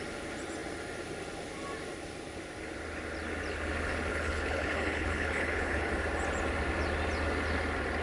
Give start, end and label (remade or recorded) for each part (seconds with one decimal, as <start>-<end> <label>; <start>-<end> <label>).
0.0-4.1 recorded; 4.1-5.9 remade; 5.9-8.0 recorded